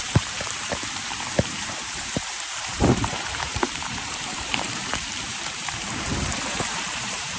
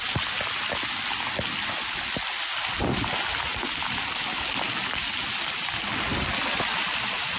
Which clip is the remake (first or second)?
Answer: first